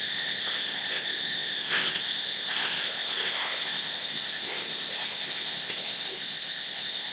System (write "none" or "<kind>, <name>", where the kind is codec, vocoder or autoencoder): codec, ZipCodec